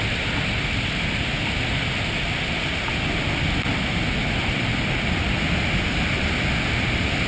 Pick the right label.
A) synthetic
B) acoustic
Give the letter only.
B